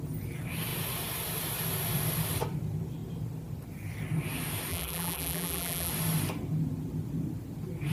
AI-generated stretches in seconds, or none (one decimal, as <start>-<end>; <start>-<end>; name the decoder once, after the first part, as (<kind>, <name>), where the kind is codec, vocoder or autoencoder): 4.7-5.9 (vocoder, BigVGAN v2)